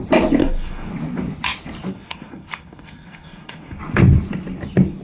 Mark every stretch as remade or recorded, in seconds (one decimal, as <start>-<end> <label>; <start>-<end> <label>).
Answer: 0.0-0.4 recorded; 0.4-0.9 remade; 0.9-1.9 recorded; 1.9-3.8 remade; 3.8-5.0 recorded